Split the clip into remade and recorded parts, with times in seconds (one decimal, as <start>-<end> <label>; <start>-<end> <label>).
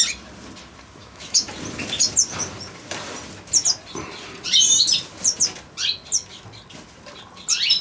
0.0-1.0 recorded; 1.0-1.5 remade; 1.5-7.8 recorded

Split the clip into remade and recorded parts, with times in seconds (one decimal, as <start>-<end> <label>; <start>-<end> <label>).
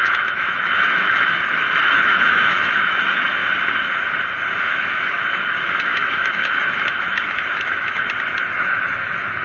0.0-3.4 remade; 3.4-4.6 recorded; 4.6-8.0 remade; 8.0-8.5 recorded; 8.5-9.4 remade